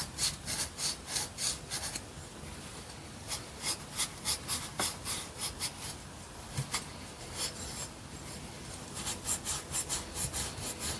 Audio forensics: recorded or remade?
recorded